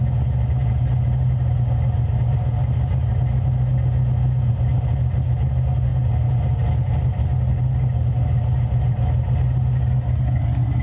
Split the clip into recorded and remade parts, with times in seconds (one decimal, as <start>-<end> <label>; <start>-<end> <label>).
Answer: 0.0-10.8 recorded